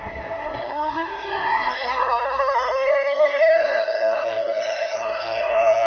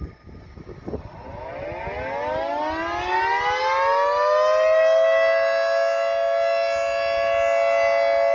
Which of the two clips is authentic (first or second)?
second